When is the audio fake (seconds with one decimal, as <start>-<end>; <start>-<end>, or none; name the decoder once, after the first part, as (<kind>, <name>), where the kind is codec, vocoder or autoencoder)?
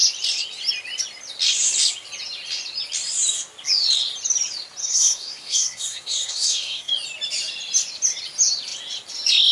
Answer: 4.8-6.9 (codec, SNAC)